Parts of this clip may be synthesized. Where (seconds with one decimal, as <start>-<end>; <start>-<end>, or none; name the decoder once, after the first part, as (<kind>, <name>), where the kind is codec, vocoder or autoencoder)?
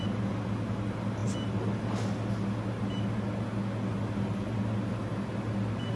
none